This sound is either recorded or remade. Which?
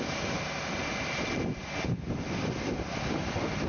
recorded